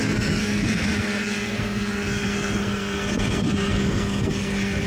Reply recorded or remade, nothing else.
remade